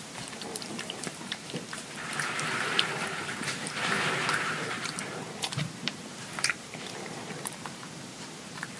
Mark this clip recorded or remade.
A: remade